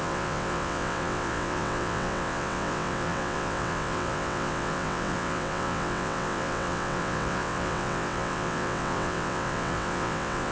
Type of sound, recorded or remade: remade